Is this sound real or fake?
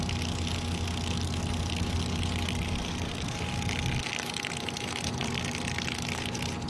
real